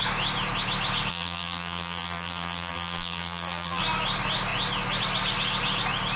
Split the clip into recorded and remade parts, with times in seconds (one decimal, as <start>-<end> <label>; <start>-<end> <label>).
0.0-1.1 recorded; 1.1-3.8 remade; 3.8-6.2 recorded